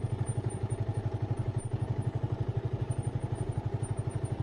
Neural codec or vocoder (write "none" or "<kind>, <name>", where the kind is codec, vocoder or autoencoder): vocoder, BigVGAN v2